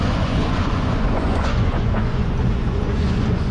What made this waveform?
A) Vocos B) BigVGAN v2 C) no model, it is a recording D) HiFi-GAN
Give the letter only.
A